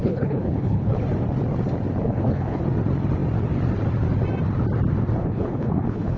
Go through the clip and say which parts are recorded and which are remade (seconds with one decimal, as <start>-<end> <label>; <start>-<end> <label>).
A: 0.0-1.0 remade; 1.0-2.0 recorded; 2.0-2.6 remade; 2.6-5.2 recorded; 5.2-6.2 remade

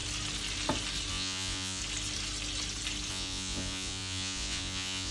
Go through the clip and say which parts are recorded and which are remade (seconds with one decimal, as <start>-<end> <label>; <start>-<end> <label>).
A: 0.0-1.1 recorded; 1.1-1.8 remade; 1.8-3.1 recorded; 3.1-5.1 remade

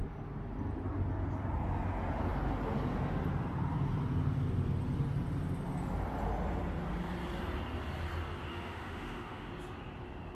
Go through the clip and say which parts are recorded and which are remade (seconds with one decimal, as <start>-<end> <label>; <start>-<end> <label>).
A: 0.0-8.5 recorded; 8.5-9.5 remade; 9.5-10.3 recorded

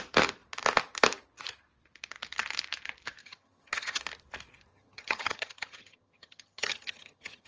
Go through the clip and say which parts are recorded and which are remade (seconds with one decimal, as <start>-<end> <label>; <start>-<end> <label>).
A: 0.0-3.2 recorded; 3.2-4.0 remade; 4.0-4.7 recorded; 4.7-7.5 remade

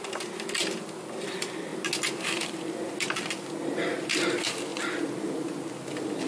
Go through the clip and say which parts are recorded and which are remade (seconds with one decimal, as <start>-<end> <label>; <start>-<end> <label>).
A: 0.0-6.3 recorded

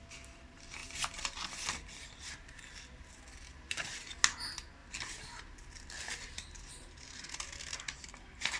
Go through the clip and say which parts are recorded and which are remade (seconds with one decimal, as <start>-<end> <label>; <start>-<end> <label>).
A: 0.0-0.8 recorded; 0.8-3.7 remade; 3.7-4.8 recorded; 4.8-5.4 remade; 5.4-8.6 recorded